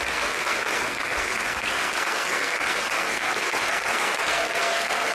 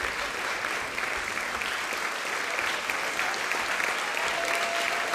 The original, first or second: second